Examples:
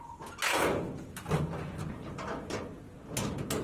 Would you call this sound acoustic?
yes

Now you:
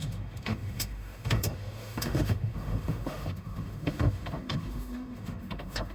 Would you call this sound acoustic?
no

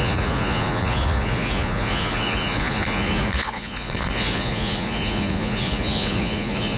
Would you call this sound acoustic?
no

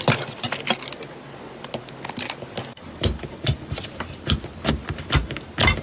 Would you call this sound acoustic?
yes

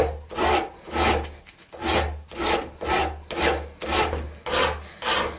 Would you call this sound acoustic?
yes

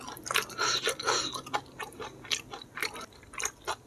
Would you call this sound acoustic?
yes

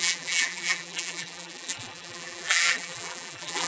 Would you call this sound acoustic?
no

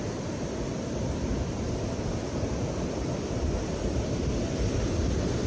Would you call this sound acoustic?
yes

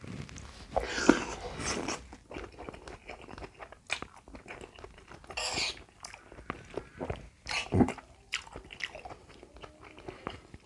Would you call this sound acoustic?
yes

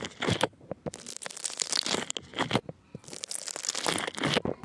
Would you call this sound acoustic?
yes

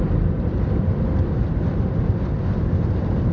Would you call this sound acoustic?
yes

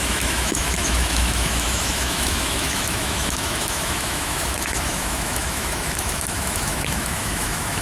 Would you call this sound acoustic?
no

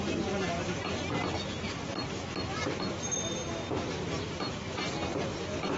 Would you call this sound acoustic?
yes